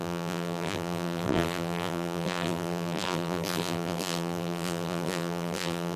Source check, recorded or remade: remade